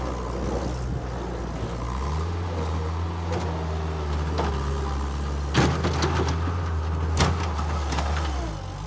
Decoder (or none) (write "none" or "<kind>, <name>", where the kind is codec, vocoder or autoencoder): none